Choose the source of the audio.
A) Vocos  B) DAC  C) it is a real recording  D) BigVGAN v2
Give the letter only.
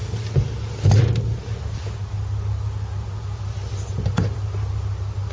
C